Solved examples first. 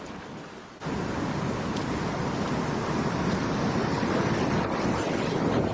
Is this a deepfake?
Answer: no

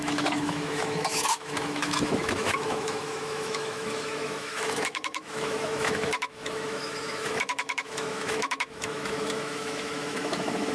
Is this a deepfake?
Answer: yes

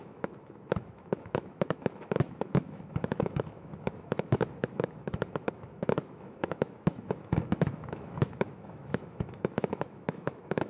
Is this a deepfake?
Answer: yes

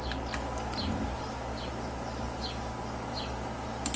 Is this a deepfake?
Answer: no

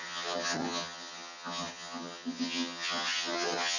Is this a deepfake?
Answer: yes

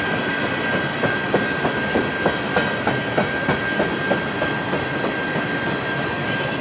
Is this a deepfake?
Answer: no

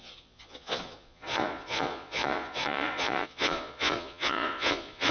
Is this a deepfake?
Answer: yes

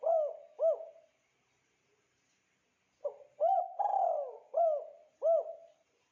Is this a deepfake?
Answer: no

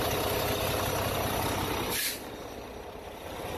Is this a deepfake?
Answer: no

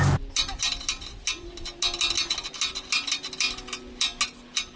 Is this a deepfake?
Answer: no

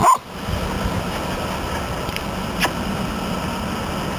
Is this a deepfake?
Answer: no